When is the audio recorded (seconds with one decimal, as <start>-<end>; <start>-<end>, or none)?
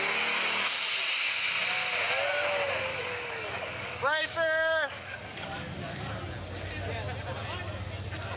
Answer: 0.0-2.9; 6.2-8.4